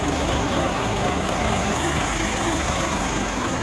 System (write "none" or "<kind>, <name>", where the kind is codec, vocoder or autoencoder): codec, SNAC